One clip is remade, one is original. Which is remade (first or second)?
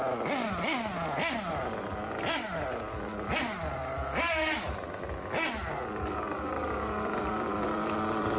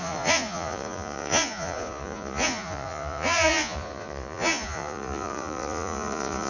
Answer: second